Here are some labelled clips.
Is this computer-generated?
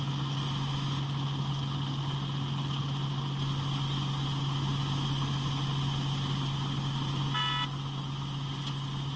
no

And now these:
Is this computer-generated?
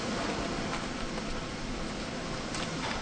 no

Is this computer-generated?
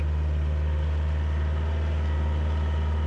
no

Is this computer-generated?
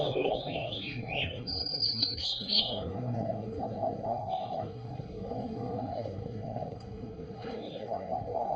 yes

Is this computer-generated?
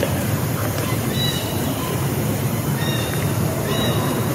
yes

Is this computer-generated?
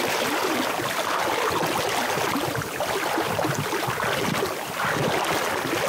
no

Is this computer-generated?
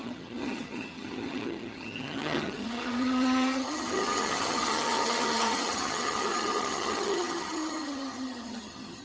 yes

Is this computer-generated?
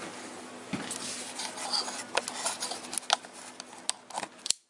no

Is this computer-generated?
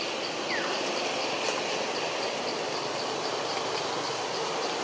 no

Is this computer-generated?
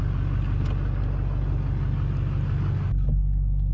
no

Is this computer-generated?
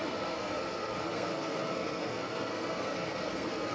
yes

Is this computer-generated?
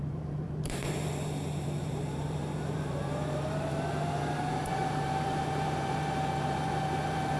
yes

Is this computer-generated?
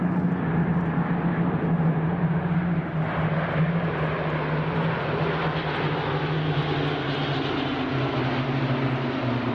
no